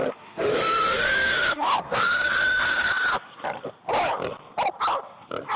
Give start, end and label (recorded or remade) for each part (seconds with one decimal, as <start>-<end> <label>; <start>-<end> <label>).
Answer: 0.0-2.9 remade; 2.9-5.6 recorded